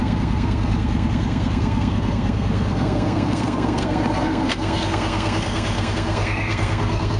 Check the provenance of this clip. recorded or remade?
remade